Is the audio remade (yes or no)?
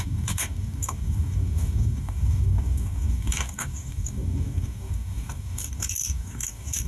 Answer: yes